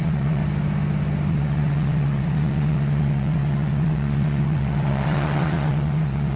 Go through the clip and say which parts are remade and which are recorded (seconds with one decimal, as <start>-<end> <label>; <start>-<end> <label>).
0.0-0.4 remade; 0.4-1.3 recorded; 1.3-6.4 remade